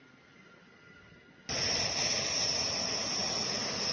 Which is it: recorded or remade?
recorded